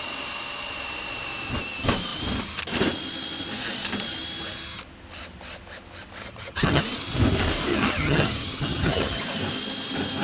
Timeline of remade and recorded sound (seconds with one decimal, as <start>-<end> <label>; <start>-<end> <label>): 0.0-6.2 recorded; 6.2-6.8 remade; 6.8-7.7 recorded; 7.7-9.2 remade; 9.2-10.2 recorded

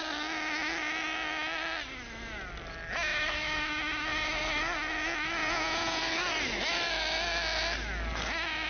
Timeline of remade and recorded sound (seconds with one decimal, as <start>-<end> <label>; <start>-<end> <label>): 0.0-5.4 recorded; 5.4-6.0 remade; 6.0-8.7 recorded

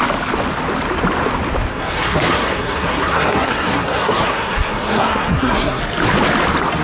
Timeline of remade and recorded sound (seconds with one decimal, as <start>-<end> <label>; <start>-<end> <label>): 0.0-1.7 recorded; 1.7-5.8 remade; 5.8-6.8 recorded

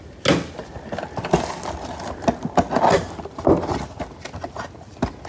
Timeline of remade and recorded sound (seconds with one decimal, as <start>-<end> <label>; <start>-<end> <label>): 0.0-5.3 recorded

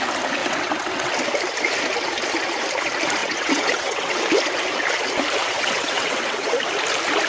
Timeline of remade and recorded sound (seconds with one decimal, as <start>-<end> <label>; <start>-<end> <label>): 0.0-0.4 recorded; 0.4-1.1 remade; 1.1-3.2 recorded; 3.2-4.2 remade; 4.2-5.4 recorded; 5.4-6.6 remade; 6.6-7.3 recorded

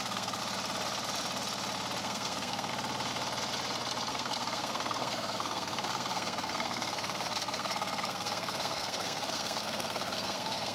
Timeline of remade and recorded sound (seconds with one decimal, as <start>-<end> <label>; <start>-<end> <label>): 0.0-0.4 remade; 0.4-2.0 recorded; 2.0-2.7 remade; 2.7-4.1 recorded; 4.1-10.7 remade

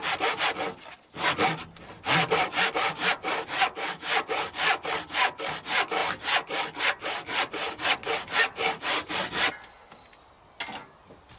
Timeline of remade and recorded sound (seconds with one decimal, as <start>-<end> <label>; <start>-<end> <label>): 0.0-11.4 recorded